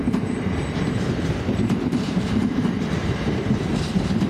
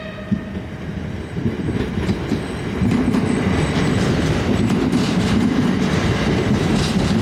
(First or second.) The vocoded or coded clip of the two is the first